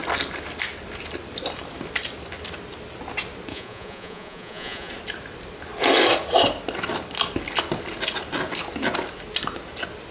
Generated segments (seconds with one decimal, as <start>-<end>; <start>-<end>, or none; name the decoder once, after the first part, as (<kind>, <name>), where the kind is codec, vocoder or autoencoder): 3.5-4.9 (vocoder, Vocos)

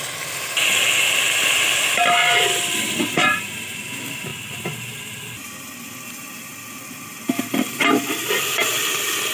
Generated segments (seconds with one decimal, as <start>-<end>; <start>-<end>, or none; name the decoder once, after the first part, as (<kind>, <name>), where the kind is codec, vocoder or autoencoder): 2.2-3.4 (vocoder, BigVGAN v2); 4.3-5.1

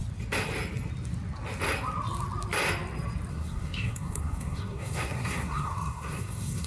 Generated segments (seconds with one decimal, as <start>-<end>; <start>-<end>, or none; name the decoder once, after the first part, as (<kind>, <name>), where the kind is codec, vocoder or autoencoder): 3.3-6.7 (codec, SNAC)

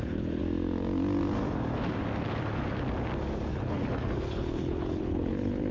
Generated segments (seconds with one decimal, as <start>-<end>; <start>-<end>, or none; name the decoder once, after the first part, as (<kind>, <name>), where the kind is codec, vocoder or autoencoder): 0.0-0.4 (codec, HILCodec); 3.5-5.7

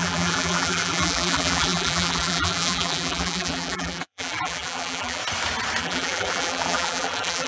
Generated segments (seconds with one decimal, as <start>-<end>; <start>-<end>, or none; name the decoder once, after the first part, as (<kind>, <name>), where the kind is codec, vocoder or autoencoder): 0.0-5.2 (vocoder, BigVGAN v2); 5.8-7.5

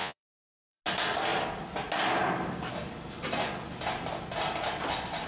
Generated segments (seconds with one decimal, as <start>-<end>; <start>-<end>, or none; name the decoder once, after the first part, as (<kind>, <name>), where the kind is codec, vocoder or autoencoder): 0.0-0.8 (vocoder, Vocos)

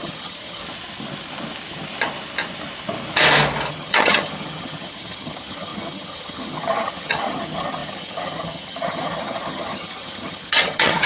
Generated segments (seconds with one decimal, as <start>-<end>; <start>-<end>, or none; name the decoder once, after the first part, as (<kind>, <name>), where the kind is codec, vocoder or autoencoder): 0.0-0.6 (vocoder, HiFi-GAN); 3.7-11.1

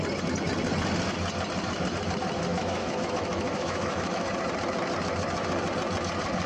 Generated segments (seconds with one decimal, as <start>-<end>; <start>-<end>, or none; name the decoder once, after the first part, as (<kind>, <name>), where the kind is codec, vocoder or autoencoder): 2.5-4.3 (autoencoder, DAC-VAE)